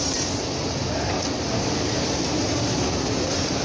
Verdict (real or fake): real